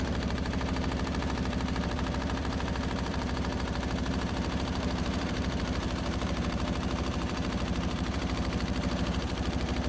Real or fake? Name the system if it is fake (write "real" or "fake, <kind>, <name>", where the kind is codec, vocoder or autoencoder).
fake, vocoder, BigVGAN v2